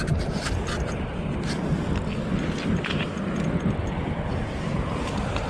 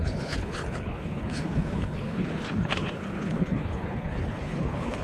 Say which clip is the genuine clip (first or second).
first